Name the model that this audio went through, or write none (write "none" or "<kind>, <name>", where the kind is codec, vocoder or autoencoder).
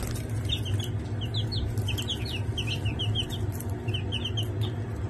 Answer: none